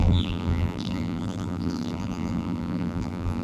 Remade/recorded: remade